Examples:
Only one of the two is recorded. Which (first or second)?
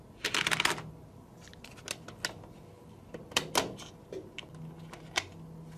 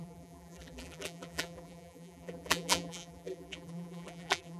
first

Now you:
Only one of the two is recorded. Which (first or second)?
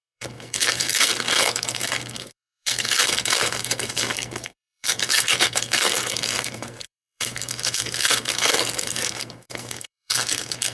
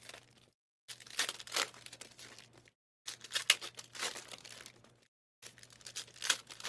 second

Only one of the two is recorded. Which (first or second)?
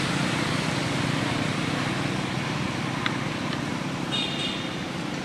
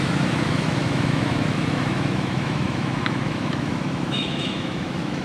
first